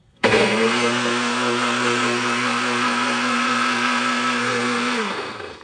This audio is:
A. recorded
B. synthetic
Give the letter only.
B